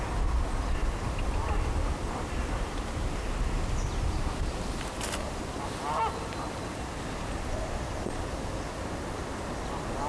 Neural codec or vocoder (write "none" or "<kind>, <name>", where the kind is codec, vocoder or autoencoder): none